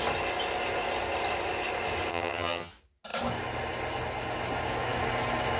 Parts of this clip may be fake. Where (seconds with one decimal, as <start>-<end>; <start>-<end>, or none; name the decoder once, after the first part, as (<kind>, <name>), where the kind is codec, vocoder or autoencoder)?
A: 2.1-2.7 (vocoder, HiFi-GAN)